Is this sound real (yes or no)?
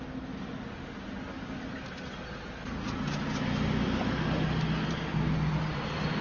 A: yes